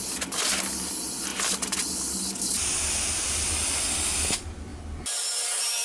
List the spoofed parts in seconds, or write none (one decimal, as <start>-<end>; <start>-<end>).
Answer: none